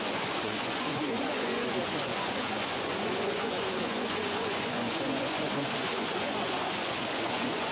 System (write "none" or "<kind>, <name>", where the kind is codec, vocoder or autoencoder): vocoder, Vocos